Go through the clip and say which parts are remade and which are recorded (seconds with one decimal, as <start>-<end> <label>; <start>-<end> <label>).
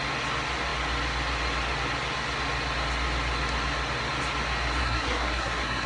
0.0-4.8 recorded; 4.8-5.9 remade